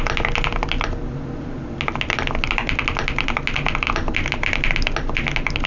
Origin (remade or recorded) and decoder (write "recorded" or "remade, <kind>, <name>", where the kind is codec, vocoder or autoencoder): recorded